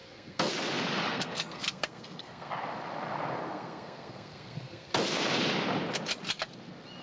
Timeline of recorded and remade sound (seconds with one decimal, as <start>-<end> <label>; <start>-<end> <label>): 0.0-0.5 remade; 0.5-1.1 recorded; 1.1-2.5 remade; 2.5-3.4 recorded; 3.4-4.9 remade; 4.9-7.0 recorded